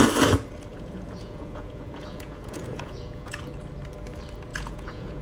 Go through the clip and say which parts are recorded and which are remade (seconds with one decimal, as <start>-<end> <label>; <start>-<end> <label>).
0.0-0.7 recorded; 0.7-3.4 remade; 3.4-4.5 recorded; 4.5-5.2 remade